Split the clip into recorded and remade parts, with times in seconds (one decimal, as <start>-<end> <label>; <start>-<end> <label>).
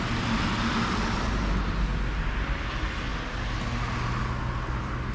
0.0-5.1 recorded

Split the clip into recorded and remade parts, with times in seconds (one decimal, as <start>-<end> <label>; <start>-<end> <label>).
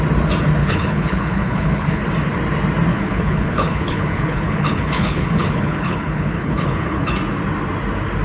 0.0-0.6 recorded; 0.6-2.0 remade; 2.0-2.9 recorded; 2.9-7.1 remade; 7.1-8.2 recorded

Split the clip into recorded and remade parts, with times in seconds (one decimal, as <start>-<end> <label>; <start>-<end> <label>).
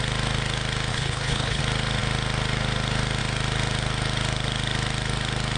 0.0-0.9 recorded; 0.9-1.6 remade; 1.6-5.6 recorded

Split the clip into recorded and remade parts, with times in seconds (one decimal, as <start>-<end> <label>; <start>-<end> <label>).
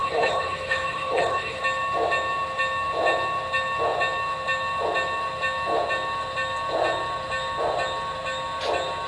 0.0-1.6 remade; 1.6-9.1 recorded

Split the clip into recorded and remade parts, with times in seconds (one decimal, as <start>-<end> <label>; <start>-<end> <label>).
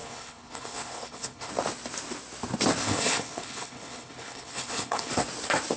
0.0-1.5 remade; 1.5-2.8 recorded; 2.8-5.1 remade; 5.1-5.8 recorded